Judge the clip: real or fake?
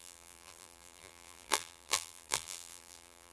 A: fake